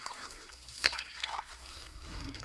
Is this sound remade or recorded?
remade